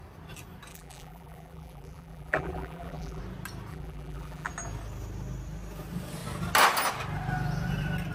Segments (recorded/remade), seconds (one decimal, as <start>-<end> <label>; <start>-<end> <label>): 0.0-0.7 recorded; 0.7-3.2 remade; 3.2-3.7 recorded; 3.7-4.5 remade; 4.5-8.1 recorded